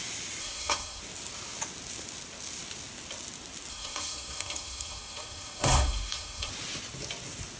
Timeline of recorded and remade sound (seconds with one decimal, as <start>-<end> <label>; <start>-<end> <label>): 0.0-0.4 recorded; 0.4-1.0 remade; 1.0-3.7 recorded; 3.7-6.5 remade; 6.5-7.6 recorded